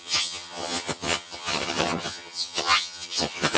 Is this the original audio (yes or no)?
no